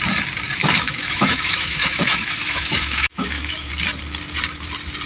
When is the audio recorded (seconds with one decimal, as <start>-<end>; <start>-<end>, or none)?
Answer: 0.0-0.6; 3.7-5.1